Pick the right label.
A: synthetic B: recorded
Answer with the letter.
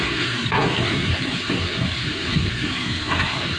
A